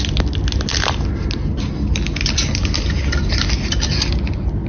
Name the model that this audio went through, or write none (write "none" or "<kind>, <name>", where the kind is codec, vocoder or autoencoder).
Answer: none